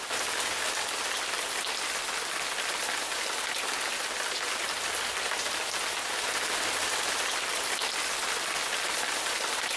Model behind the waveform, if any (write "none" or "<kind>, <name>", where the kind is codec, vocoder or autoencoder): none